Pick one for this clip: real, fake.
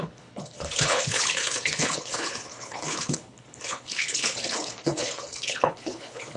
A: fake